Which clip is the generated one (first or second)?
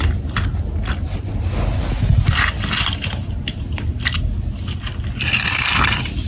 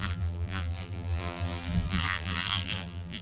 second